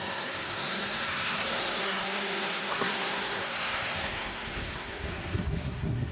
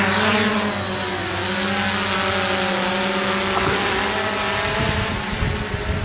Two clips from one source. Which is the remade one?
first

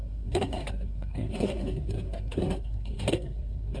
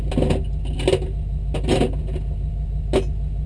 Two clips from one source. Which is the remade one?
first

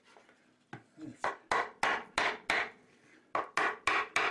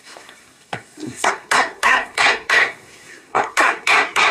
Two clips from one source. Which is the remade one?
second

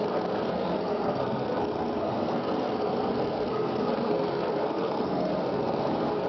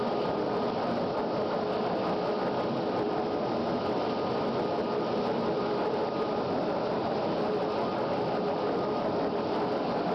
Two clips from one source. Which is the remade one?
first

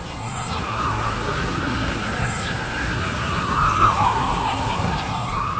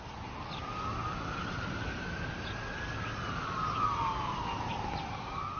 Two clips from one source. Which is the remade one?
first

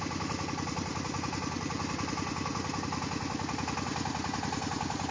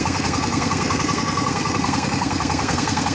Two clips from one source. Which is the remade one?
second